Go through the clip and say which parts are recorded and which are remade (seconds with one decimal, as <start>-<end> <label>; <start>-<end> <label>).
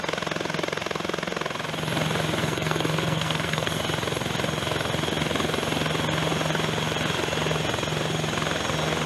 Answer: 0.0-2.4 recorded; 2.4-3.8 remade; 3.8-9.1 recorded